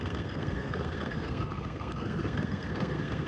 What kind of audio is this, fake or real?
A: fake